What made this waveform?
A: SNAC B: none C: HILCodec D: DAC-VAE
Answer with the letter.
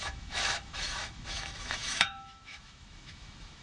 D